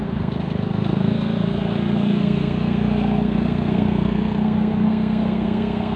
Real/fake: fake